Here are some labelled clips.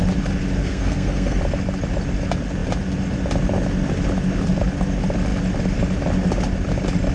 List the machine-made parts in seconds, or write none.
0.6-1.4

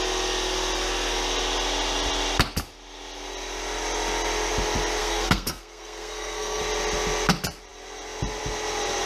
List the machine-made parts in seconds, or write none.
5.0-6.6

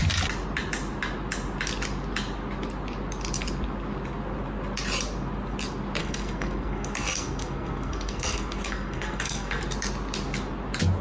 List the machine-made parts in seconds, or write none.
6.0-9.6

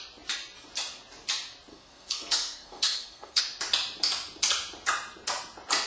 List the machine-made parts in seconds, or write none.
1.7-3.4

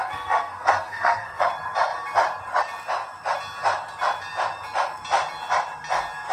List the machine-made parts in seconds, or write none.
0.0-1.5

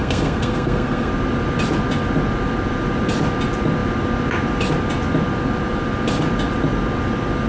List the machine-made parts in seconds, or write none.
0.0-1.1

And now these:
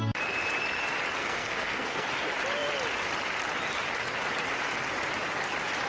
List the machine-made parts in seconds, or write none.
1.2-2.1

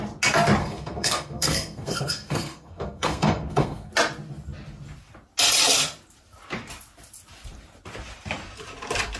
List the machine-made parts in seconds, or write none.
0.6-3.9